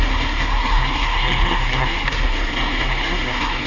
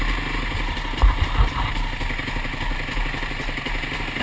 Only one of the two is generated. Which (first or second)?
first